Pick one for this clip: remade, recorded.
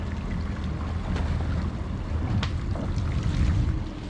recorded